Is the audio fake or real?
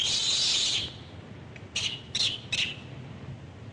real